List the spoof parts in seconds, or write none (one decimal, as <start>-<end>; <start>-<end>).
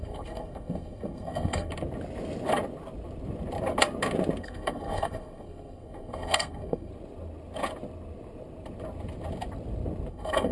0.0-1.7; 4.4-6.9; 10.1-10.5